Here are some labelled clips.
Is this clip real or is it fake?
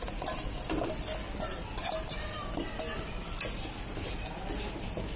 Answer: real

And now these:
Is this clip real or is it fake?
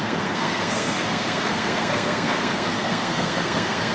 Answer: fake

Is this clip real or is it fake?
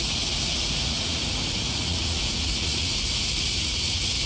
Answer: fake